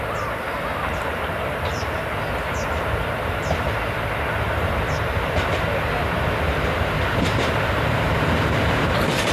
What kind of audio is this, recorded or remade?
remade